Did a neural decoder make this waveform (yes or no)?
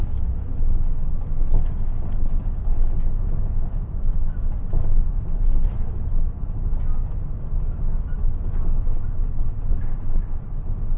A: no